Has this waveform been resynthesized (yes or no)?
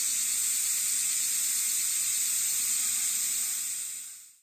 no